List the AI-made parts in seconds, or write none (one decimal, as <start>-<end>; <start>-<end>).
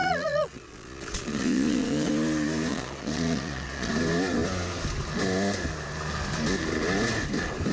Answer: 0.0-2.1; 2.7-3.9